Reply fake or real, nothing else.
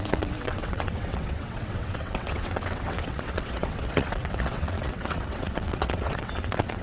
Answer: fake